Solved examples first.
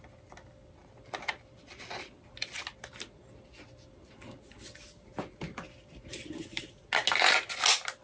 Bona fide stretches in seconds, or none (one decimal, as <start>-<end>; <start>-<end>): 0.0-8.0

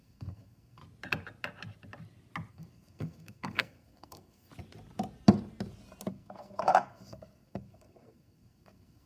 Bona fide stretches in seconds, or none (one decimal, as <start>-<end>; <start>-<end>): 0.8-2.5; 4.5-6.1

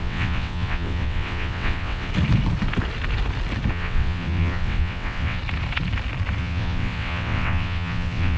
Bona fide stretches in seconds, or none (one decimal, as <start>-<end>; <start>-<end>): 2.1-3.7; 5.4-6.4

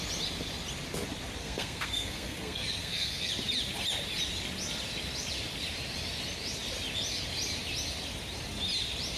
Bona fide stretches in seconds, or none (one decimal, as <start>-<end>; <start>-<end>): 0.0-1.4; 3.3-9.2

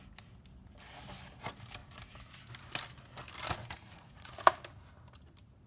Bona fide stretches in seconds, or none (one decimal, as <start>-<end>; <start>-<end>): 0.0-3.6; 4.3-5.7

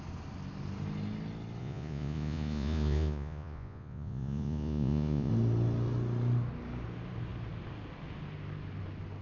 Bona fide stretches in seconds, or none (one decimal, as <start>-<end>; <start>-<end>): 0.0-1.6; 5.3-9.2

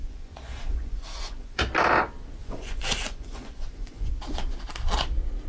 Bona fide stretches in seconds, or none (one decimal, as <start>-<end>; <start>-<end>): 1.6-2.4; 4.1-5.5